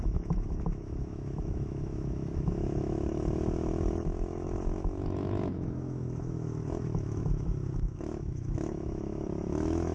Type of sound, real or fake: fake